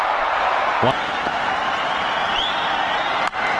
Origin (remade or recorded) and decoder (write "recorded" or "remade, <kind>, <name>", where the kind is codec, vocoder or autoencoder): remade, vocoder, BigVGAN v2